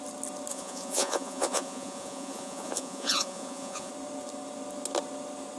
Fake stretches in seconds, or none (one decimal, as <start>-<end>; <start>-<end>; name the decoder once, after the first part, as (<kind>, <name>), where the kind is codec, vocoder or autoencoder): 0.5-3.9 (vocoder, Vocos)